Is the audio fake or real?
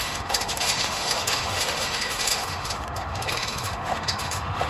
fake